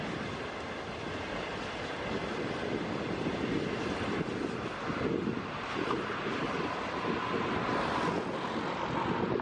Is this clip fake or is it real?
real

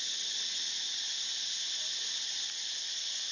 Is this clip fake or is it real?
real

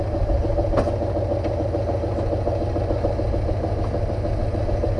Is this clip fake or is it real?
real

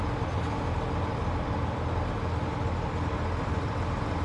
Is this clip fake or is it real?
real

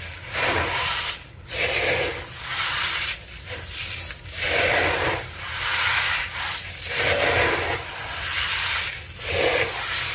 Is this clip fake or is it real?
real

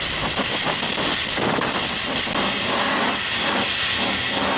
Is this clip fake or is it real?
real